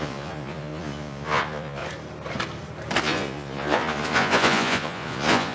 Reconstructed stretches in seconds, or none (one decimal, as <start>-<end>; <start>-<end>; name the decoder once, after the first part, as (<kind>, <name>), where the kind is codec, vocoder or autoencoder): 0.0-1.8 (vocoder, Vocos); 3.0-5.5